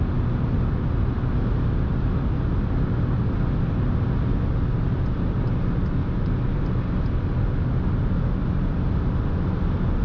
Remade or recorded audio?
recorded